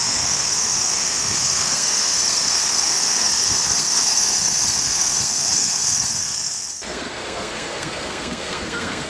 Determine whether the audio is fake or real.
fake